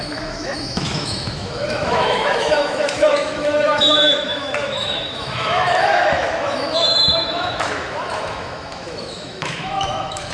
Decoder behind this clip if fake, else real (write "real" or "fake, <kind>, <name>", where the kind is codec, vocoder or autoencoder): fake, autoencoder, DAC-VAE